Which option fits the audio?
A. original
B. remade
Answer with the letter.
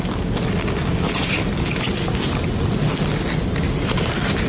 A